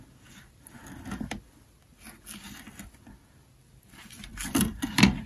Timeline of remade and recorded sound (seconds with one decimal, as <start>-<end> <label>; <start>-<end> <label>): 0.0-5.3 recorded